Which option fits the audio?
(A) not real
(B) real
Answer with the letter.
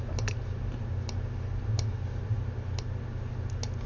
B